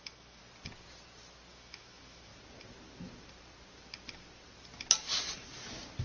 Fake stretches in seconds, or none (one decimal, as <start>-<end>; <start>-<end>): 0.0-0.4; 1.5-2.3